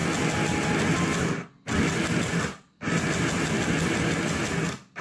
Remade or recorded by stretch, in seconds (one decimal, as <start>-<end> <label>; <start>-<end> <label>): 0.0-5.0 recorded